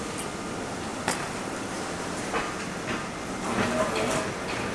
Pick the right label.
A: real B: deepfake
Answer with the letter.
A